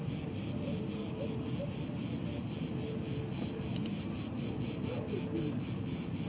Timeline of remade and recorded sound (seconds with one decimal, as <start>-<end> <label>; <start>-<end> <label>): 0.0-6.3 recorded